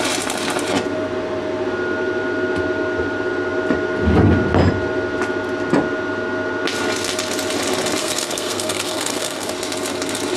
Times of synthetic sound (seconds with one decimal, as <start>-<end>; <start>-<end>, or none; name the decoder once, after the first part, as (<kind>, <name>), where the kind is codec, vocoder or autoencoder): 8.0-9.5 (codec, SNAC)